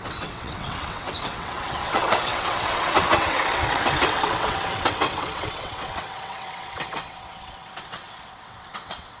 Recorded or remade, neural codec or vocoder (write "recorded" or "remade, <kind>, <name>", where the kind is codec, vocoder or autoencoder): remade, vocoder, WaveNeXt